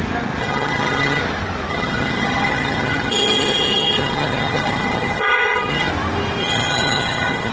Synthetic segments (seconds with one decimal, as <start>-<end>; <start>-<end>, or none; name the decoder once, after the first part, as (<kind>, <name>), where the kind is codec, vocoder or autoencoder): 0.4-1.2 (vocoder, HiFi-GAN); 1.7-5.9; 6.4-7.5